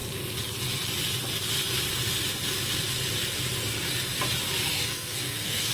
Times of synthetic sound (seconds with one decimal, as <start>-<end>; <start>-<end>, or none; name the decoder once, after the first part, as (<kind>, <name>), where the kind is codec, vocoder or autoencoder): 4.7-5.7 (codec, SNAC)